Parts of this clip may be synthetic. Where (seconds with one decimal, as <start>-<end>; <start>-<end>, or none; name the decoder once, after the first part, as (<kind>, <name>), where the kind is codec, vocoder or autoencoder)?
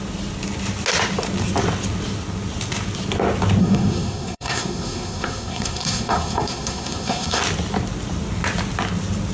3.6-7.4 (codec, SNAC)